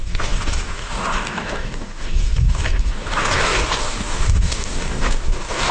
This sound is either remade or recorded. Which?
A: remade